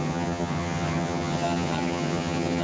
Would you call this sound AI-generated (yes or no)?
yes